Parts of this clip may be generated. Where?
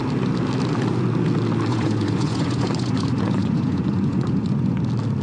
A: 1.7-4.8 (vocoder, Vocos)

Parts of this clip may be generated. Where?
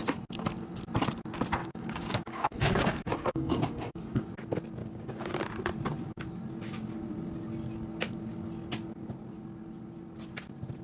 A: 1.6-4.3 (codec, DAC); 4.8-5.3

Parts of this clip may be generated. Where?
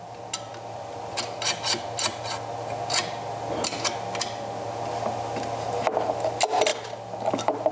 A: none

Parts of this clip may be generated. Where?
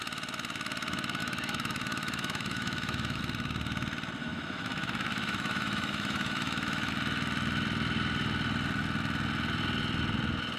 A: 1.2-3.2 (autoencoder, DAC-VAE); 4.2-6.9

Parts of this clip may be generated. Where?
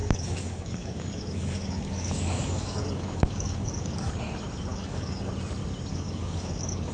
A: 0.0-4.1 (codec, DAC); 4.7-5.3; 5.9-6.9